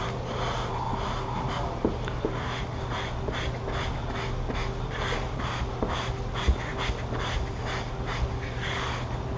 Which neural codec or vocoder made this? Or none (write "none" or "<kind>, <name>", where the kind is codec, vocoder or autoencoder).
none